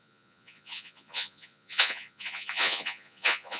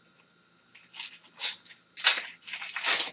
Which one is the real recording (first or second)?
second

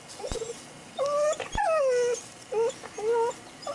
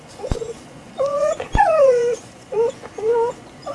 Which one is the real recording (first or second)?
first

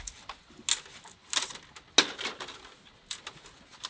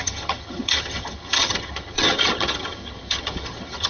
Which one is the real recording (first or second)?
first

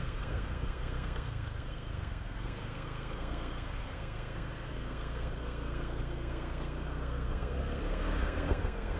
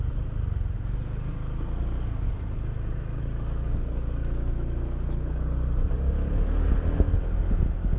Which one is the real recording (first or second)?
second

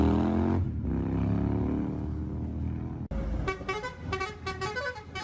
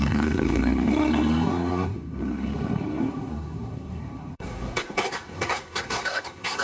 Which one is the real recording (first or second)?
first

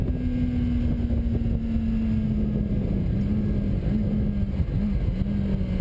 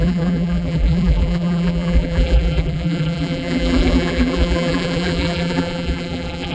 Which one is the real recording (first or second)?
first